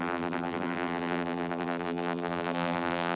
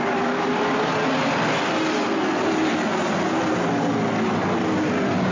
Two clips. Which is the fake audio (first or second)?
first